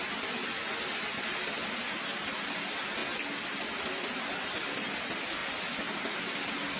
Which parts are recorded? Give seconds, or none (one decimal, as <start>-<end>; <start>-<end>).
0.0-6.8